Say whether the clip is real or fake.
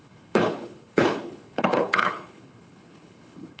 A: fake